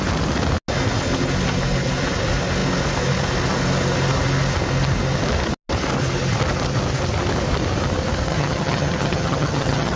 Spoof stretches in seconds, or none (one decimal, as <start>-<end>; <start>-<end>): 8.3-10.0